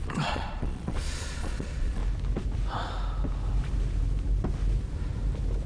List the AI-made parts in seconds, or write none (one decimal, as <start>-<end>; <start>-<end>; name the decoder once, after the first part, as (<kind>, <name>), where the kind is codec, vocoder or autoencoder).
0.0-2.0 (vocoder, Vocos)